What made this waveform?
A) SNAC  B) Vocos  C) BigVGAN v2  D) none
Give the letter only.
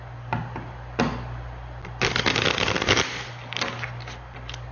D